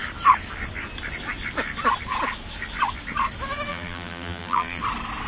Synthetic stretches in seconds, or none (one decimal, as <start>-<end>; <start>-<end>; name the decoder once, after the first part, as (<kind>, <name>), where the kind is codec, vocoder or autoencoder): 3.7-4.8 (vocoder, BigVGAN v2)